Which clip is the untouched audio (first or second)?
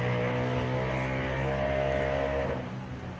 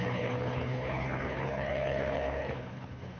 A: first